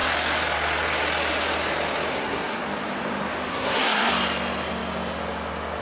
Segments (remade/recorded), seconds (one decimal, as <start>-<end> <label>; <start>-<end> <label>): 0.0-2.1 recorded; 2.1-2.6 remade; 2.6-3.5 recorded; 3.5-4.1 remade; 4.1-5.8 recorded